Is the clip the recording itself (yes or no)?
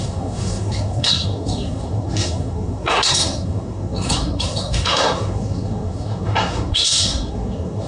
no